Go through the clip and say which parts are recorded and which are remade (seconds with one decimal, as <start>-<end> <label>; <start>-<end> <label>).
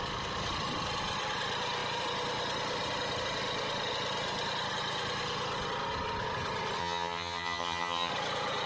0.0-6.8 recorded; 6.8-8.1 remade; 8.1-8.7 recorded